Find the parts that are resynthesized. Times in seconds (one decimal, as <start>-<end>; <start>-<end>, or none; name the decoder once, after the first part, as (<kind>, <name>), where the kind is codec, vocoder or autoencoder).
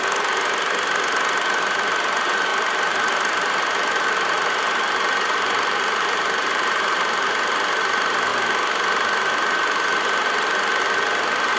2.5-7.2 (vocoder, BigVGAN v2)